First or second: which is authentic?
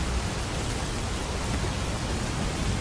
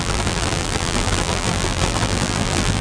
first